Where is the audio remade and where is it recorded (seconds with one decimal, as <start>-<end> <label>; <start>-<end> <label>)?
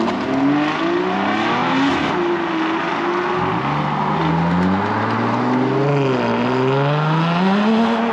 0.0-8.1 recorded